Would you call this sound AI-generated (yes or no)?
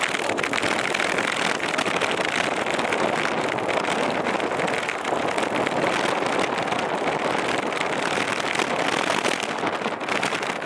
no